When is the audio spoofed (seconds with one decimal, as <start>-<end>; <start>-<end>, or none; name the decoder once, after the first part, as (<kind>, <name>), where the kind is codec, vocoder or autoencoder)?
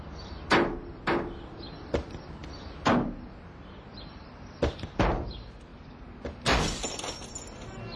none